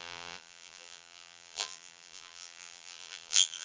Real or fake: fake